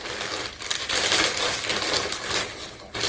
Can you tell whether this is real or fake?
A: real